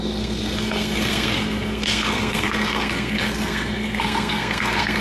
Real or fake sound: fake